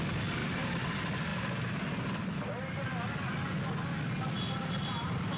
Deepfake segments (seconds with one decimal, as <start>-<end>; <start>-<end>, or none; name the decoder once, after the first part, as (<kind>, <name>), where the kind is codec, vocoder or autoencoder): 0.4-0.9 (vocoder, BigVGAN v2)